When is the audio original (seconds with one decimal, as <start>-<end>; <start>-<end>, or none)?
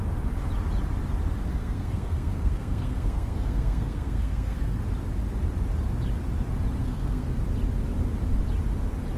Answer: 0.0-1.5; 4.8-6.8; 7.4-9.2